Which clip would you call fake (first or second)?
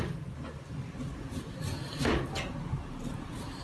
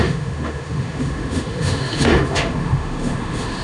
second